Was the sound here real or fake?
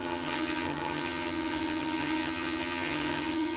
fake